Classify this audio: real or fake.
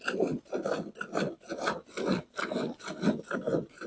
real